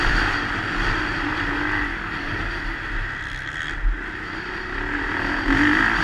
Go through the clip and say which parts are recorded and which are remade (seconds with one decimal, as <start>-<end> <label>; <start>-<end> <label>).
0.0-1.9 recorded; 1.9-2.4 remade; 2.4-6.0 recorded